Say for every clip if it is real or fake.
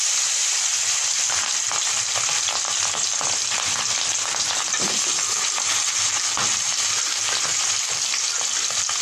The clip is real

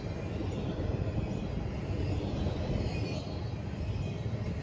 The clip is real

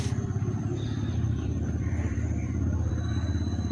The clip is fake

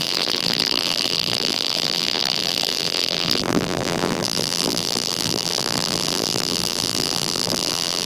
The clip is fake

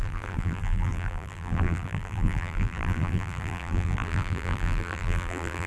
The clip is fake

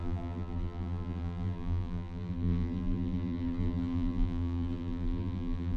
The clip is fake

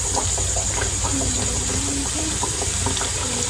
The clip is fake